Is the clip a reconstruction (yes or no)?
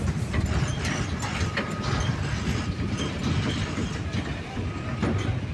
no